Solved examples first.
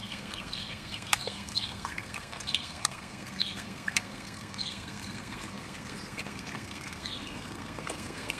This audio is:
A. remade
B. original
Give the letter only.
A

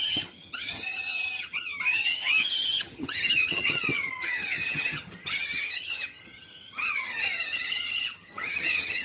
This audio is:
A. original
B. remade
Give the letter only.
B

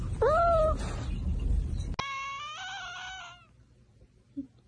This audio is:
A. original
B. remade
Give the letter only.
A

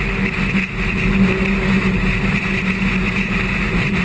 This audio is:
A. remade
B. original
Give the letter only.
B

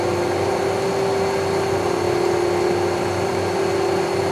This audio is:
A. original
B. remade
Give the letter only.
A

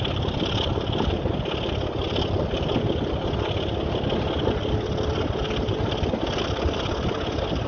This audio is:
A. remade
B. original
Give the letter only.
B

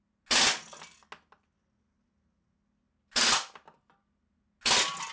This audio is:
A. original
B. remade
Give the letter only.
A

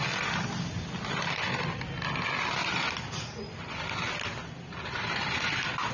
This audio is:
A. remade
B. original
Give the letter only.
B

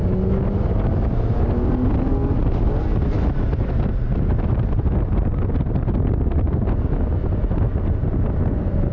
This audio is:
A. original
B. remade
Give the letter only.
A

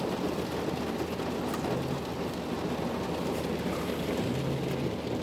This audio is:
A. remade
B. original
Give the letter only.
B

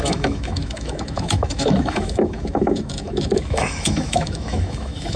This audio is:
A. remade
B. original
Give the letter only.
A